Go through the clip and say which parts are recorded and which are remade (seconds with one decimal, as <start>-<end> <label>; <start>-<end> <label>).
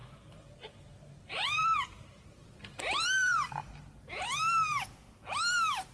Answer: 0.0-3.5 remade; 3.5-5.9 recorded